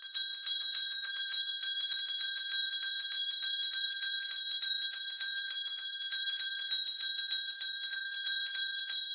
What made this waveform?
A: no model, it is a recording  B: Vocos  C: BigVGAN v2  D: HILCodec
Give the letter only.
B